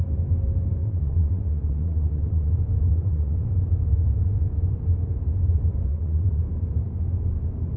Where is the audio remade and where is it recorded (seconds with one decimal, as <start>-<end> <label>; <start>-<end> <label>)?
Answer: 0.0-0.8 recorded; 0.8-2.5 remade; 2.5-2.9 recorded; 2.9-3.5 remade; 3.5-5.9 recorded; 5.9-6.4 remade; 6.4-7.8 recorded

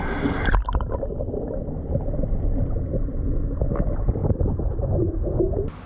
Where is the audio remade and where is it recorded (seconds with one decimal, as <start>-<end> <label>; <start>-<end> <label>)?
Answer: 0.0-5.9 recorded

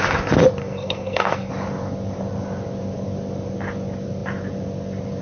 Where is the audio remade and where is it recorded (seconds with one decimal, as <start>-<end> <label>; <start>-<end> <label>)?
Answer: 0.0-0.6 recorded; 0.6-1.5 remade; 1.5-5.2 recorded

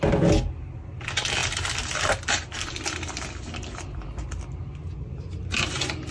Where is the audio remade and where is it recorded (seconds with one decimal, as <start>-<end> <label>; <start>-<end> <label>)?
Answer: 0.0-6.1 recorded

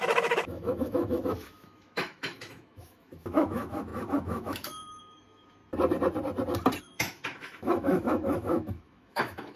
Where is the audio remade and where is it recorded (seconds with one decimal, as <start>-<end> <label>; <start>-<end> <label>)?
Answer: 0.0-5.6 remade; 5.6-6.8 recorded; 6.8-9.6 remade

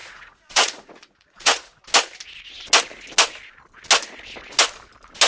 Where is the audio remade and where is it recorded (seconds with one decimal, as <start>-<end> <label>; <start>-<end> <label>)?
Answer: 0.0-1.8 remade; 1.8-5.3 recorded